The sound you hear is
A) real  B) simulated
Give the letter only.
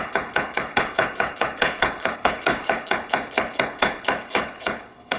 B